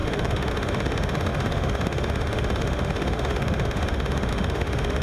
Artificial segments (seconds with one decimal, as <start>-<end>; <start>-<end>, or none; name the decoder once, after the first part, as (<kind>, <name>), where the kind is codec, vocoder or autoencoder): 0.0-5.0 (autoencoder, DAC-VAE)